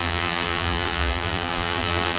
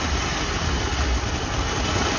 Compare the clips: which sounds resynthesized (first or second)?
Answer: first